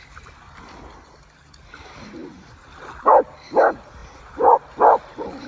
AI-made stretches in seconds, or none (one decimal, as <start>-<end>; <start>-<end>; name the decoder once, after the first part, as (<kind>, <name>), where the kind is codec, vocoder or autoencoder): 4.0-5.5 (vocoder, BigVGAN v2)